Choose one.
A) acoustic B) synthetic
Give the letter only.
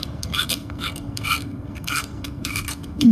B